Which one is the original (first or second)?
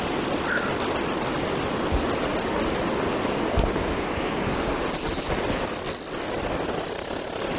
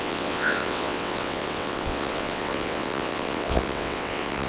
first